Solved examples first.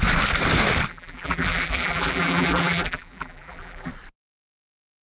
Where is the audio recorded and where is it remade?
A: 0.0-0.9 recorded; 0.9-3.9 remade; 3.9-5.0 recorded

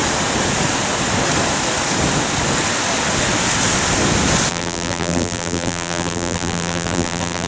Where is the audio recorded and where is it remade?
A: 0.0-4.5 recorded; 4.5-7.5 remade

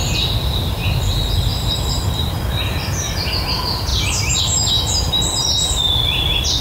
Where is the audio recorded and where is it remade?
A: 0.0-1.5 recorded; 1.5-2.3 remade; 2.3-3.9 recorded; 3.9-4.7 remade; 4.7-6.6 recorded

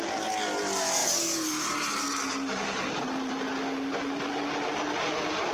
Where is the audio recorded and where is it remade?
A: 0.0-1.0 recorded; 1.0-1.9 remade; 1.9-5.5 recorded

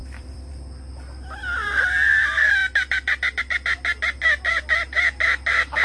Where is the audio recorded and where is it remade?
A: 0.0-0.5 remade; 0.5-1.4 recorded; 1.4-2.2 remade; 2.2-5.8 recorded

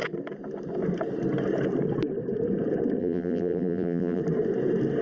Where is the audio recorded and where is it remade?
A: 0.0-3.0 recorded; 3.0-4.2 remade; 4.2-5.0 recorded